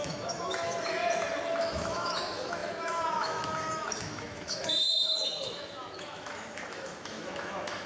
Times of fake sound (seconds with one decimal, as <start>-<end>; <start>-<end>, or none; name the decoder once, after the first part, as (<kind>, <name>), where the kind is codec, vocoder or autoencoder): 0.0-1.0 (autoencoder, DAC-VAE); 1.6-7.9